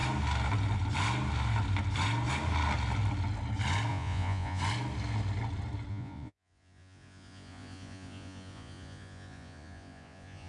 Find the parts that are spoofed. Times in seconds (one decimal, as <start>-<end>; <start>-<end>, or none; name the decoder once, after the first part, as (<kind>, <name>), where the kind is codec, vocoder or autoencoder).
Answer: 3.9-4.6 (vocoder, Vocos); 5.9-10.5